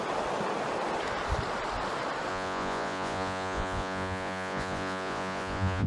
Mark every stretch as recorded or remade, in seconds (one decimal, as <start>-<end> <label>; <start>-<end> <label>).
0.0-2.3 recorded; 2.3-5.9 remade